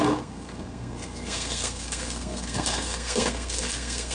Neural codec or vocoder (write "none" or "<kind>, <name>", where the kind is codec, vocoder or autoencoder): codec, SNAC